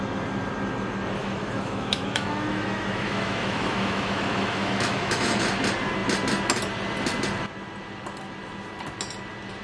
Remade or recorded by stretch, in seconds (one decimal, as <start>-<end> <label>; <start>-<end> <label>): 0.0-1.2 recorded; 1.2-5.4 remade; 5.4-9.6 recorded